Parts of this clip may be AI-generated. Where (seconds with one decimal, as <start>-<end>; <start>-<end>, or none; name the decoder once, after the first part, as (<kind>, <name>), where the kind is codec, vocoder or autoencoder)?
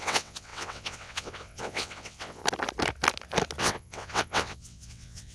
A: 0.0-2.4 (vocoder, WaveNeXt); 3.6-5.3